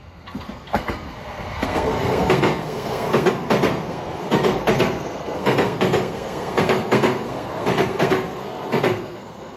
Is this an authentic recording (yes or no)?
no